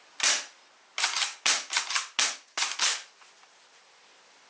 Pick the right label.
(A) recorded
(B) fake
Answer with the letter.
A